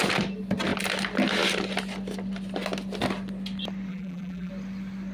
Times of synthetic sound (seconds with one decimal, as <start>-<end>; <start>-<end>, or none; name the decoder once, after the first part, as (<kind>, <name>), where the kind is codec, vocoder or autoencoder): 3.9-4.5 (vocoder, BigVGAN v2)